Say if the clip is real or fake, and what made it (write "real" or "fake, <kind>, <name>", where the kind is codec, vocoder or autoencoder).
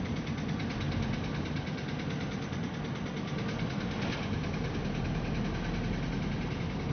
real